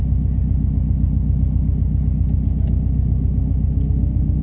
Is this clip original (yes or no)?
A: yes